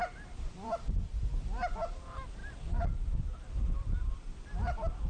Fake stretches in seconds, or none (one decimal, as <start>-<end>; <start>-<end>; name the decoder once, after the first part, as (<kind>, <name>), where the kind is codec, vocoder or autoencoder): none